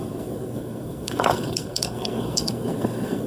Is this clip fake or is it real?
fake